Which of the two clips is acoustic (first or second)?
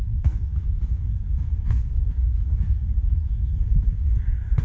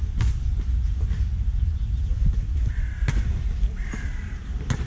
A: second